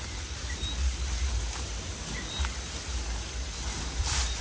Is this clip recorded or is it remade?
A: recorded